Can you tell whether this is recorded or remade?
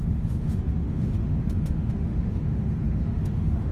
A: remade